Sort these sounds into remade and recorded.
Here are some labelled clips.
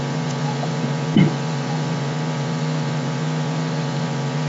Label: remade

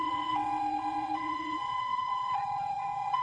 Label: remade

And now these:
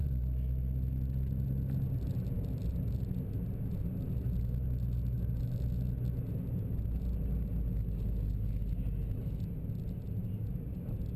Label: recorded